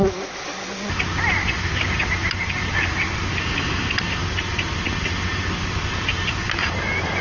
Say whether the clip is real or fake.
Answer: real